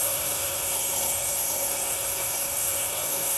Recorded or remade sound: remade